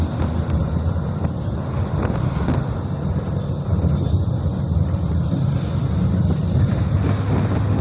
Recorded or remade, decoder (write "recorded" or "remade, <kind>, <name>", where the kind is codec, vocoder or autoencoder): recorded